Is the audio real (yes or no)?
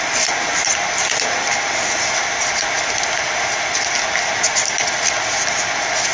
yes